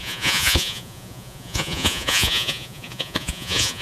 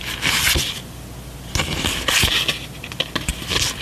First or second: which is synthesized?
first